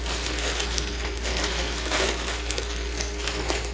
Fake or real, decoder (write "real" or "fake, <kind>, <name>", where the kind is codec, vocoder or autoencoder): fake, codec, SNAC